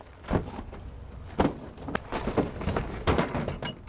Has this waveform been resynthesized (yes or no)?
no